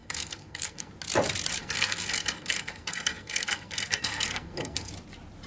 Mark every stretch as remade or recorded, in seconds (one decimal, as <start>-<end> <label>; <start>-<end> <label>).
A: 0.0-0.9 remade; 0.9-1.6 recorded; 1.6-4.9 remade; 4.9-5.5 recorded